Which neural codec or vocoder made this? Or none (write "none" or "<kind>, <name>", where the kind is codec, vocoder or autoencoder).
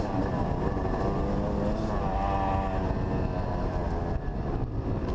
none